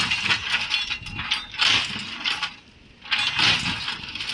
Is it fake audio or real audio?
real